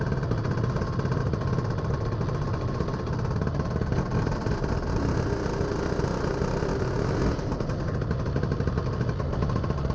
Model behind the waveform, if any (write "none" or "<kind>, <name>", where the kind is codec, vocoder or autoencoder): none